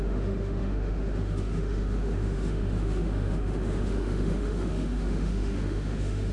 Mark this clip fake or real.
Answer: fake